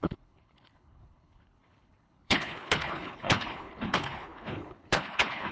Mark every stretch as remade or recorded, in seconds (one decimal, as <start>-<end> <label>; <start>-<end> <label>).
0.0-5.5 remade

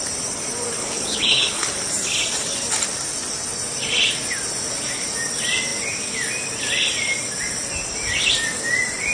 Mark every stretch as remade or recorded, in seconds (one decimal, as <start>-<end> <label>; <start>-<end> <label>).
0.0-0.8 recorded; 0.8-1.7 remade; 1.7-9.1 recorded

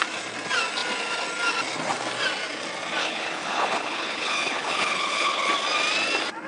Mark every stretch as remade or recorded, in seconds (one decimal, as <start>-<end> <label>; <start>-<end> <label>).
0.0-3.0 recorded; 3.0-5.5 remade; 5.5-6.5 recorded

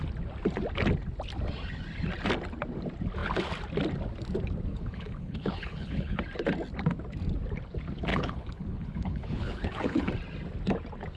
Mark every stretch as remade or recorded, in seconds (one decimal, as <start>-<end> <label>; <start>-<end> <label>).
0.0-4.7 recorded; 4.7-6.2 remade; 6.2-8.1 recorded; 8.1-10.1 remade; 10.1-11.2 recorded

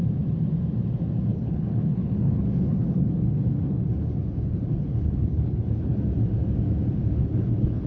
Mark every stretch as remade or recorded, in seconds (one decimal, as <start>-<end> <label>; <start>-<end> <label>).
0.0-1.3 recorded; 1.3-6.0 remade; 6.0-7.2 recorded; 7.2-7.9 remade

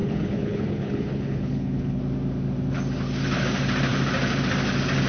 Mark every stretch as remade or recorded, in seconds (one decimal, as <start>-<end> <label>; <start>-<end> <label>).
0.0-2.0 remade; 2.0-5.1 recorded

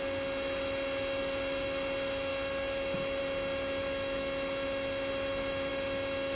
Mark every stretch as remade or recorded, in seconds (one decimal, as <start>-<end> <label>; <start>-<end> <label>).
0.0-6.4 recorded